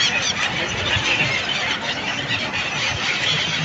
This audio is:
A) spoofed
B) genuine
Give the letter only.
B